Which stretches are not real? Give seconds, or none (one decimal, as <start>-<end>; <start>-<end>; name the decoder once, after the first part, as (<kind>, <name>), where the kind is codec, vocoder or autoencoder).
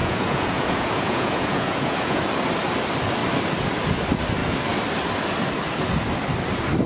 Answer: 0.0-2.2 (vocoder, Vocos)